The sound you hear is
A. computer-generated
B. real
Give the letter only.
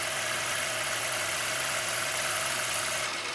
B